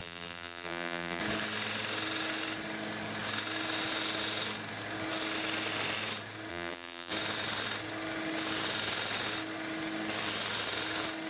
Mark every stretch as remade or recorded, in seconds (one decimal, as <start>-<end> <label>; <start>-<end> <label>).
0.0-1.2 remade; 1.2-6.5 recorded; 6.5-7.1 remade; 7.1-11.3 recorded